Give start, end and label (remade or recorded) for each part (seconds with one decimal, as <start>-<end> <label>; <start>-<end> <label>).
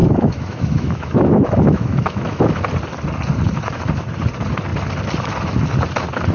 0.0-2.6 remade; 2.6-6.3 recorded